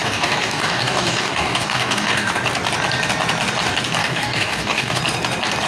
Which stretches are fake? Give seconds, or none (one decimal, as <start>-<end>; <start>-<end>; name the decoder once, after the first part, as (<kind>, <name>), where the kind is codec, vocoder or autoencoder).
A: 0.0-2.3 (codec, DAC); 4.0-5.0